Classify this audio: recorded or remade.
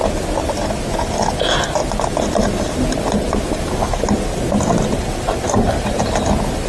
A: recorded